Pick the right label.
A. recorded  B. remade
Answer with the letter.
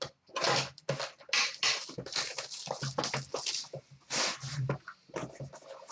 A